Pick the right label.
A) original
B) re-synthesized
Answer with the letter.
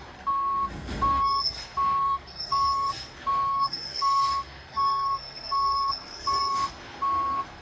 B